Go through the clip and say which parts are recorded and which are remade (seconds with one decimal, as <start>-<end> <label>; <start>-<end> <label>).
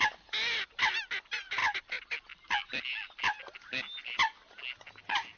0.0-5.4 recorded